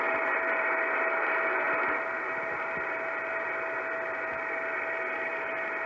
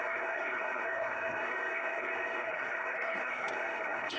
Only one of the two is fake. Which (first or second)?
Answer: second